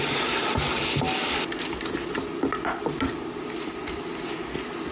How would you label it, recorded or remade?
recorded